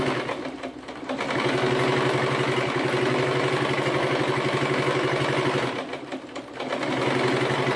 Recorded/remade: recorded